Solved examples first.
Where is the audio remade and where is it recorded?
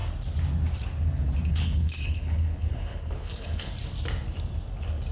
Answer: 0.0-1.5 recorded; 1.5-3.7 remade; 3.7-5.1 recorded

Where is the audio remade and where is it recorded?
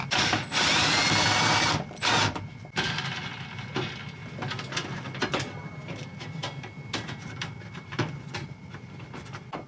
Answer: 0.0-1.0 remade; 1.0-1.8 recorded; 1.8-4.2 remade; 4.2-5.2 recorded; 5.2-6.4 remade; 6.4-6.9 recorded; 6.9-9.7 remade